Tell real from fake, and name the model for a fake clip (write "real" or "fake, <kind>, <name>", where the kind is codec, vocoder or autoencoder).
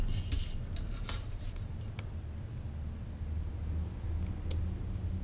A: real